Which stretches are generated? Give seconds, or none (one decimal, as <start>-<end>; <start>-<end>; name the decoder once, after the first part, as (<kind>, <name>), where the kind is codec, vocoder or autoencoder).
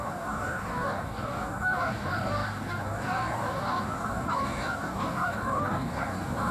0.0-6.5 (codec, DAC)